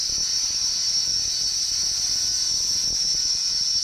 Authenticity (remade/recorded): recorded